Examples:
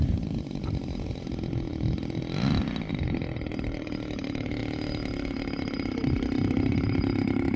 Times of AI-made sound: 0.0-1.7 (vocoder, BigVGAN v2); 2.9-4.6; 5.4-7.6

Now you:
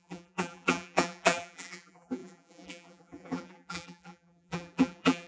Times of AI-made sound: 0.0-5.3 (vocoder, BigVGAN v2)

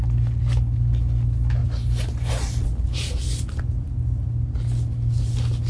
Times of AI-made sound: none

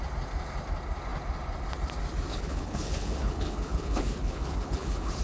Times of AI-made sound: 2.3-5.2 (codec, HILCodec)

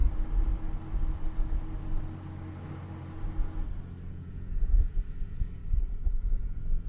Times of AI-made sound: 4.1-5.6 (vocoder, Vocos); 6.2-6.9

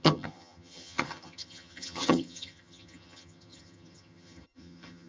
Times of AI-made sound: 0.0-5.1 (vocoder, HiFi-GAN)

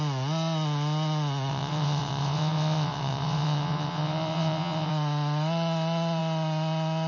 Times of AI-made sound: 1.5-4.9 (vocoder, WaveNeXt)

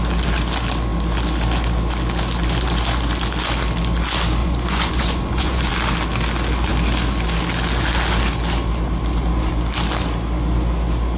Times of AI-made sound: 4.4-5.7 (vocoder, Vocos)